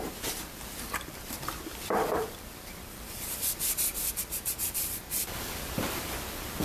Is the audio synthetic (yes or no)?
yes